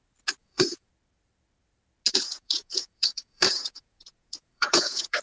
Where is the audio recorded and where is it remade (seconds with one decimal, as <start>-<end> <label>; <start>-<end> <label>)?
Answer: 0.0-0.4 recorded; 0.4-0.9 remade; 0.9-2.1 recorded; 2.1-5.2 remade